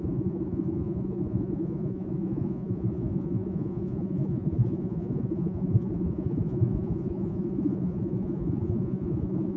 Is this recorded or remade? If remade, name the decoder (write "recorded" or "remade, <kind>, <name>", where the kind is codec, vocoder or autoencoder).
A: remade, vocoder, Vocos